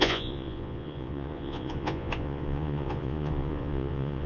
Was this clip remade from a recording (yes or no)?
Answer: yes